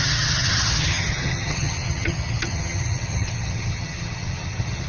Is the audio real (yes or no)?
no